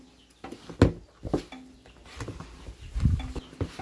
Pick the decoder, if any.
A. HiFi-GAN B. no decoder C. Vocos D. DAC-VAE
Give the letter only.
B